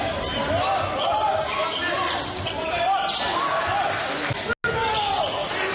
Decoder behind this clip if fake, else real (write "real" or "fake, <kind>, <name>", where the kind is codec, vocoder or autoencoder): real